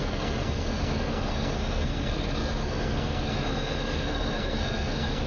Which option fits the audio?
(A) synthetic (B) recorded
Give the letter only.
A